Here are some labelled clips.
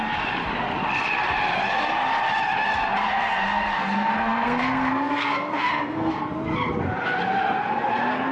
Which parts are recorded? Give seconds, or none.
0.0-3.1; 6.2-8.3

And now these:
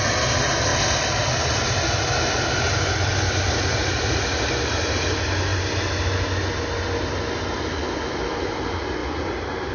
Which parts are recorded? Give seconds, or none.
0.0-9.7

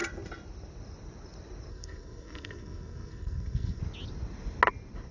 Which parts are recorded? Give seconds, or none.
0.0-1.7; 3.8-5.1

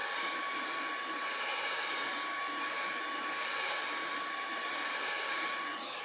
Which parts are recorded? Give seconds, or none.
0.0-6.0

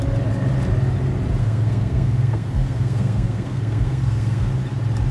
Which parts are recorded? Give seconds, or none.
0.0-1.4; 4.5-5.1

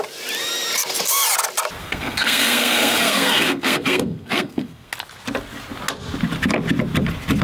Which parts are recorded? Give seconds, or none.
0.0-1.8; 4.9-7.4